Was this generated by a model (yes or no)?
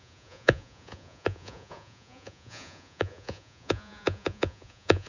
yes